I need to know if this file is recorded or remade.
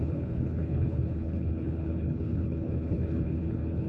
remade